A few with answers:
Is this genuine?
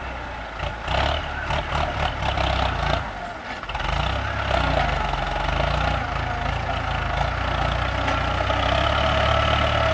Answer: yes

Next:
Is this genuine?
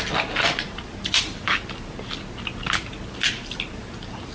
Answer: yes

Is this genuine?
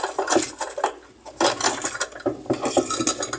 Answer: yes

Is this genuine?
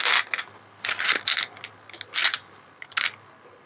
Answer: yes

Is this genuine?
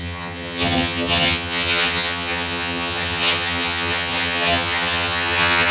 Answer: no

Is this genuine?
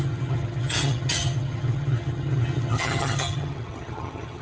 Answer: no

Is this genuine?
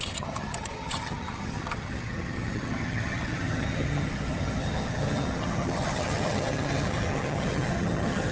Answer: no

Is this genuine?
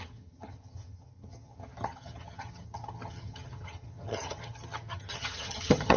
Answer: no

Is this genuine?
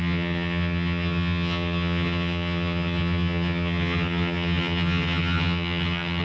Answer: no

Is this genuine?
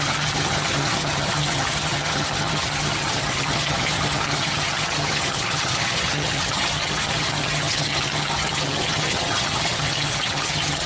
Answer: no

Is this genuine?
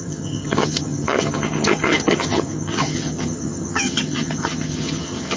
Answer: no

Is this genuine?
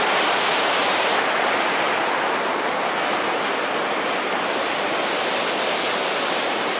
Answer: yes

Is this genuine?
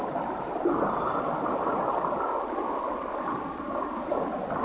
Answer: yes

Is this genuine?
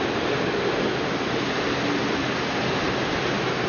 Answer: yes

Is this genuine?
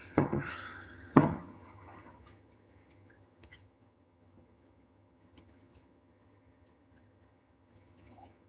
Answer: no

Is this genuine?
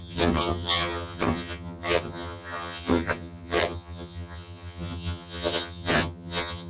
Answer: no